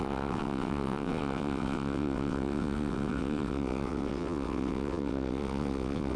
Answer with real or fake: fake